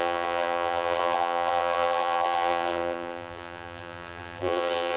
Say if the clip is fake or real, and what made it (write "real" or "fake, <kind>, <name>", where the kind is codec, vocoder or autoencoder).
fake, vocoder, BigVGAN v2